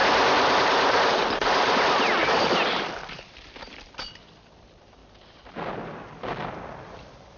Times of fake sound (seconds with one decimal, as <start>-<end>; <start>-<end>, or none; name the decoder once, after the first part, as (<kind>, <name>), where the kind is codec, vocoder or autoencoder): 0.0-5.0 (vocoder, BigVGAN v2); 7.0-7.4